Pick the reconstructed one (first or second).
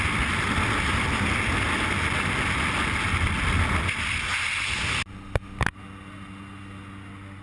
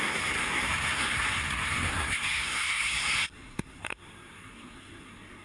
second